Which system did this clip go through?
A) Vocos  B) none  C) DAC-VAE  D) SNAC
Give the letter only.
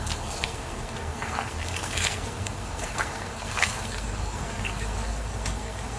D